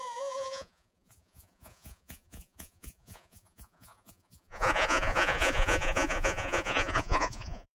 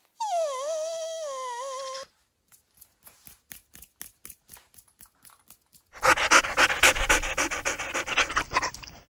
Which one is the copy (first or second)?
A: first